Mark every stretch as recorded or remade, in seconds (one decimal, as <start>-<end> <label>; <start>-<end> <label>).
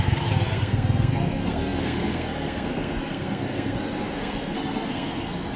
0.0-5.6 remade